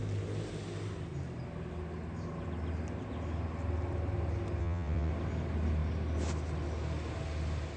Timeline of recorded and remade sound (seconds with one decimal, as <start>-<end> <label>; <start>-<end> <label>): 0.0-4.6 recorded; 4.6-5.1 remade; 5.1-7.8 recorded